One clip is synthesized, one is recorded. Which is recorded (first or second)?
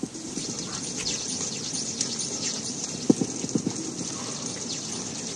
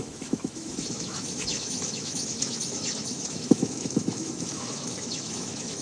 first